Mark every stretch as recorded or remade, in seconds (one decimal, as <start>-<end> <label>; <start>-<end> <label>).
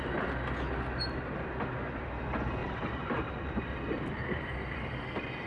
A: 0.0-2.6 recorded; 2.6-3.7 remade; 3.7-4.2 recorded; 4.2-5.0 remade; 5.0-5.5 recorded